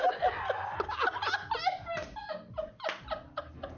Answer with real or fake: real